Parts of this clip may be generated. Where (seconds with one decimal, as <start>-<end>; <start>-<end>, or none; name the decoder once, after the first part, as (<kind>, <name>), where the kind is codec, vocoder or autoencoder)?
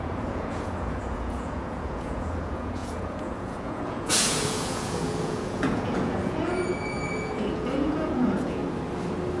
0.0-8.6 (vocoder, Vocos)